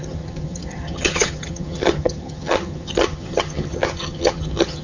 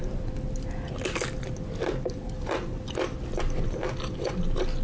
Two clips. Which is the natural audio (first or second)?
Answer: second